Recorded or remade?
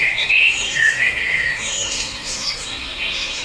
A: remade